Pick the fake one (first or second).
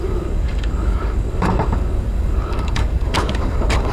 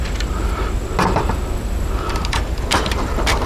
first